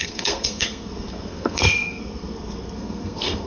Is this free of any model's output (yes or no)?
no